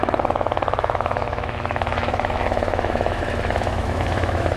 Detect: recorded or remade remade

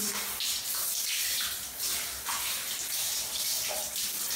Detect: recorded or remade recorded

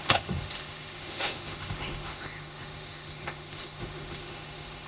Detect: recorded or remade remade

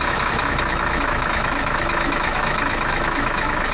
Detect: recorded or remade remade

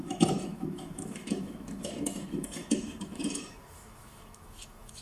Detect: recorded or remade remade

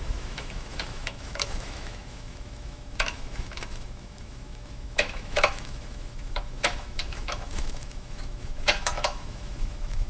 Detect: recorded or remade remade